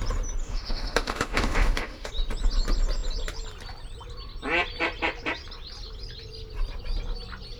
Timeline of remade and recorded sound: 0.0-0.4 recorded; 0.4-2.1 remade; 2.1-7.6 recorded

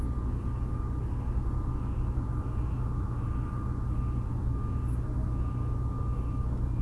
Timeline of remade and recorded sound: 0.0-6.8 recorded

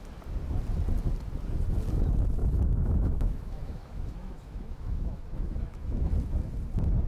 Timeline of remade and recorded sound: 0.0-2.4 recorded; 2.4-6.1 remade; 6.1-7.1 recorded

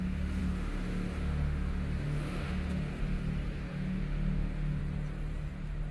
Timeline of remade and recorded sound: 0.0-0.4 recorded; 0.4-3.2 remade; 3.2-3.7 recorded; 3.7-4.8 remade; 4.8-5.9 recorded